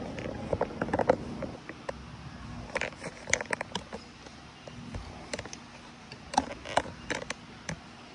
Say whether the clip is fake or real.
real